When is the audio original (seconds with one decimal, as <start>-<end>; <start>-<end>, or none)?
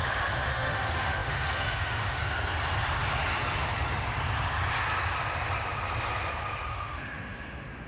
2.2-6.7